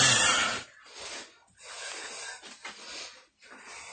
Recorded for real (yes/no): yes